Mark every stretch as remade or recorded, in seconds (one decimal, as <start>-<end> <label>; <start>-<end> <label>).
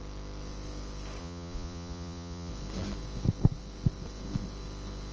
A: 0.0-1.2 recorded; 1.2-2.5 remade; 2.5-5.1 recorded